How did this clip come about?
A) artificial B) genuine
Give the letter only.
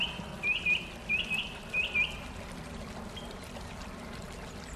B